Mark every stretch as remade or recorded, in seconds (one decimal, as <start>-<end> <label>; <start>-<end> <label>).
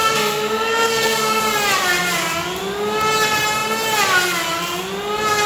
0.0-1.4 remade; 1.4-5.5 recorded